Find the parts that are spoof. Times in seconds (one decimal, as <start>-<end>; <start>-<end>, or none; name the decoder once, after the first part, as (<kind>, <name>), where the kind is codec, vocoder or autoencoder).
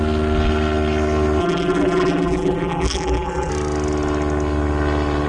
1.4-3.5 (vocoder, BigVGAN v2)